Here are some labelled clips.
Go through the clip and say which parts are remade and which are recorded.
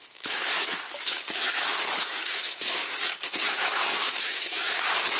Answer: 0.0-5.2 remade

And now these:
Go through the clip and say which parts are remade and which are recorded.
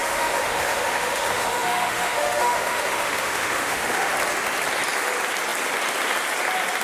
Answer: 0.0-4.1 remade; 4.1-6.8 recorded